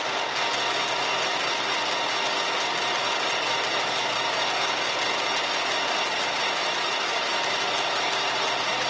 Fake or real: real